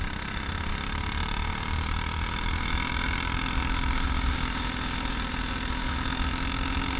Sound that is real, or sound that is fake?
real